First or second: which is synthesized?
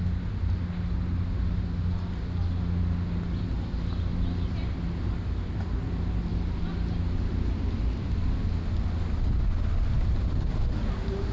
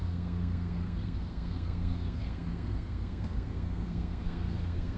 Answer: second